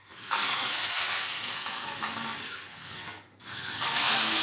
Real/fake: fake